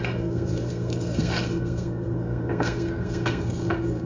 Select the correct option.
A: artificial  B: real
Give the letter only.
A